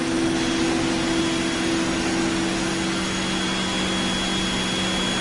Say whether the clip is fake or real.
real